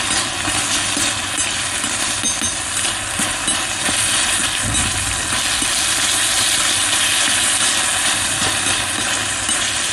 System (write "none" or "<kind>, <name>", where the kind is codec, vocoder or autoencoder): none